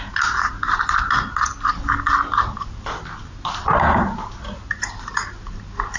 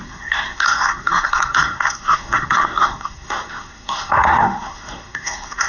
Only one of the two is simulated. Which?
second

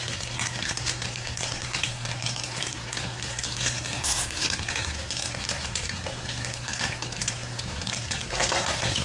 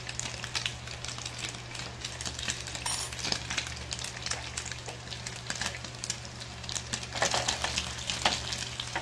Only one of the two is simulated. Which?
first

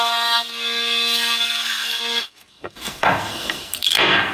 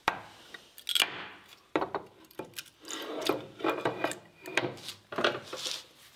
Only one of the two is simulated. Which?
first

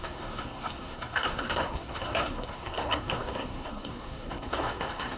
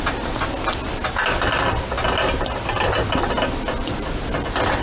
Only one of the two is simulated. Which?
first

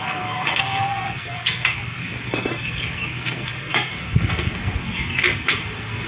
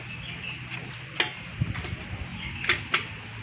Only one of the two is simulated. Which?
first